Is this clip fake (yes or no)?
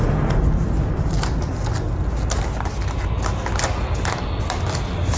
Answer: no